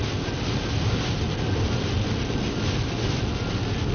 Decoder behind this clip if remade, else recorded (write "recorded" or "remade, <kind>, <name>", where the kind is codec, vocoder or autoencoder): recorded